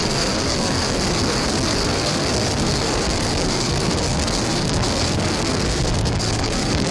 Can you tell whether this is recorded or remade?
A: remade